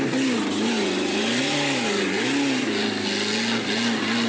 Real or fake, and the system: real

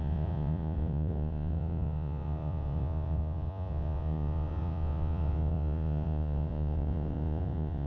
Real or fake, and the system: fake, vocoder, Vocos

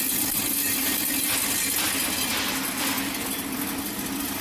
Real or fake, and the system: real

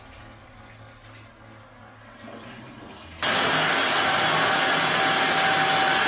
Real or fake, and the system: real